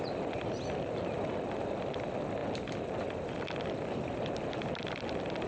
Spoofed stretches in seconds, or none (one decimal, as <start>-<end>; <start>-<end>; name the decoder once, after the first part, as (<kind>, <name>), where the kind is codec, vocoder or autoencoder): none